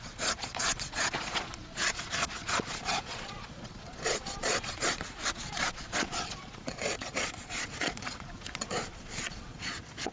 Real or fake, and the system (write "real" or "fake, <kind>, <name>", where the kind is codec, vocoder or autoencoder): fake, vocoder, Vocos